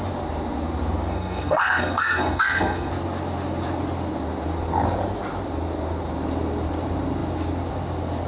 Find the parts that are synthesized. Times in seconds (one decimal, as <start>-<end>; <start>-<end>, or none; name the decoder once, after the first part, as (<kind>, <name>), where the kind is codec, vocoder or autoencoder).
1.1-2.9 (codec, SNAC)